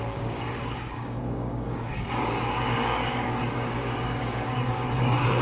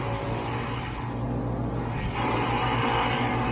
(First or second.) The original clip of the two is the second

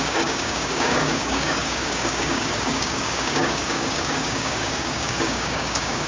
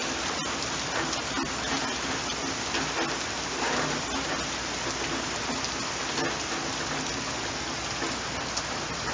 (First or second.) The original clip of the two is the second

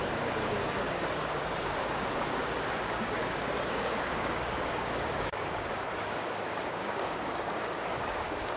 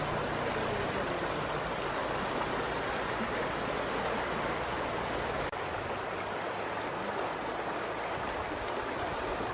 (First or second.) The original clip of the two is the second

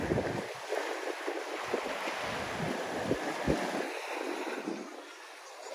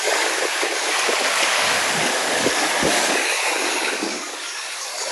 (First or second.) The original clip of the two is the first